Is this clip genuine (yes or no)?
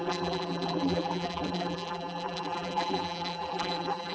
no